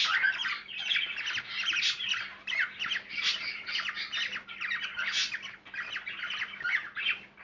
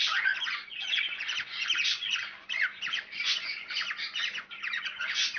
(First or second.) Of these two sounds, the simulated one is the second